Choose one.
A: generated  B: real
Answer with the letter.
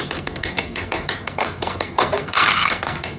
A